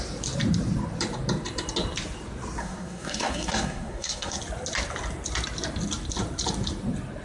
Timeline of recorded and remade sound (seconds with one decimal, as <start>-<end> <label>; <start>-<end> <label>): 0.0-2.6 recorded; 2.6-4.4 remade; 4.4-7.2 recorded